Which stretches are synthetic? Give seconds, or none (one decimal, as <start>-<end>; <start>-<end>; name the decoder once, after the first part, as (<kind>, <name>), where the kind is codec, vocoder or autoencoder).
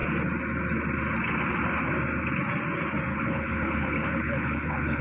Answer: 3.1-5.0 (codec, HILCodec)